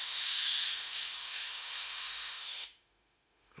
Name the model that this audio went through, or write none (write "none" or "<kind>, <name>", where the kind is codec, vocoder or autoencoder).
autoencoder, DAC-VAE